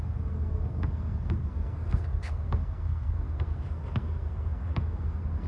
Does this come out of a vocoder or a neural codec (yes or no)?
yes